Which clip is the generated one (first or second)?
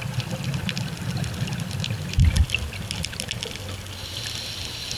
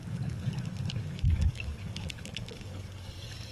second